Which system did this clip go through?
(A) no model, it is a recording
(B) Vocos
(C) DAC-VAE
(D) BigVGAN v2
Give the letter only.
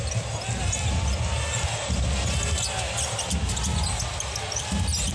A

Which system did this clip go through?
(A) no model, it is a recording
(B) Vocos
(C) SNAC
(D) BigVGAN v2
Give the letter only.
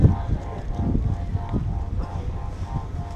A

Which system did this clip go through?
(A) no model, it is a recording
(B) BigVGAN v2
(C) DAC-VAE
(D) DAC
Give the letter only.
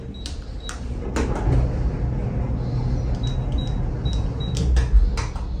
A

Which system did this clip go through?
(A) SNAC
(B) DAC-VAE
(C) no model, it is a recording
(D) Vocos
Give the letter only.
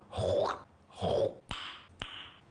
C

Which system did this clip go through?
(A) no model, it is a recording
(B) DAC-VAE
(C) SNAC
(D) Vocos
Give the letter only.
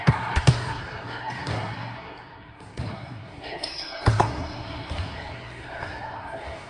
C